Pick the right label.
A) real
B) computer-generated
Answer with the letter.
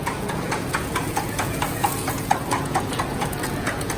B